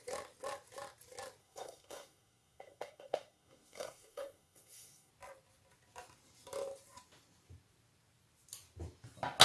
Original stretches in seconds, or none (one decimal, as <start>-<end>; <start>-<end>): 0.0-1.4; 5.1-9.4